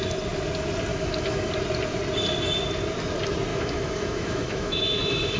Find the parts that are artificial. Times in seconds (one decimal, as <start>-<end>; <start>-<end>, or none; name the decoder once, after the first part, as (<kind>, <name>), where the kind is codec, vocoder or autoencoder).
0.9-1.5 (autoencoder, DAC-VAE); 3.5-5.4